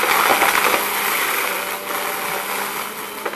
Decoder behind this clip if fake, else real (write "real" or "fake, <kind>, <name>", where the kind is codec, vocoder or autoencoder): real